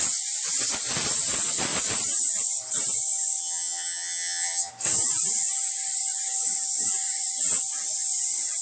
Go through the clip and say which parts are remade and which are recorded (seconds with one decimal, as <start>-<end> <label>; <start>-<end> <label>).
0.0-3.4 recorded; 3.4-4.7 remade; 4.7-8.6 recorded